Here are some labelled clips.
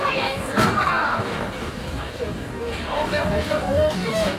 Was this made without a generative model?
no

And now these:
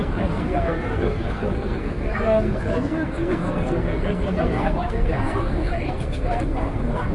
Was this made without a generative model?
no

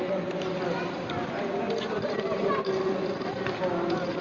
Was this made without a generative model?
yes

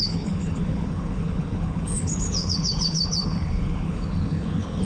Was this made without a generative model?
no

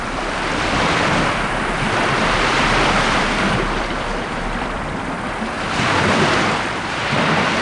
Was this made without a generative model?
no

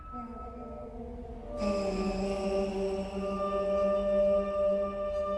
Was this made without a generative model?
yes